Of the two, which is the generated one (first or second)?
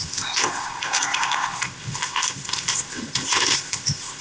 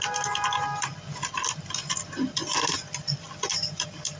first